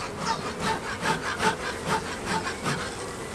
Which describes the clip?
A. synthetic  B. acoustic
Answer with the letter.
B